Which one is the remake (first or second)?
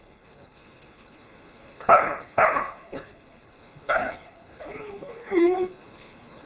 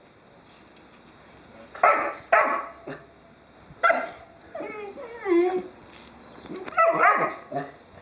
first